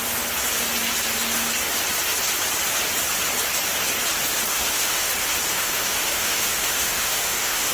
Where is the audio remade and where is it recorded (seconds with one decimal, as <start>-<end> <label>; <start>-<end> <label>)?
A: 0.0-4.5 recorded; 4.5-5.1 remade; 5.1-5.5 recorded; 5.5-7.7 remade